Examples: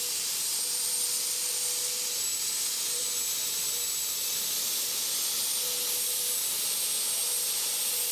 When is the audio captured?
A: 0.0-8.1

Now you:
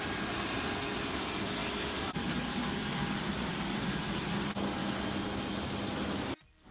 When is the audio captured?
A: 0.0-6.7

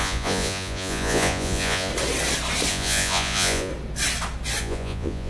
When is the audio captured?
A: 1.9-2.7; 3.7-4.6

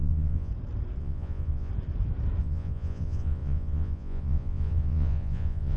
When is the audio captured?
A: 0.5-1.0; 1.7-2.4

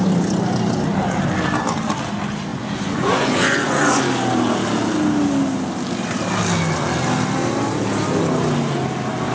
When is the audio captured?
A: 0.0-2.5; 4.0-9.3

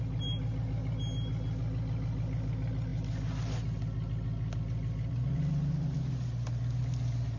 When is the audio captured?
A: 0.0-7.4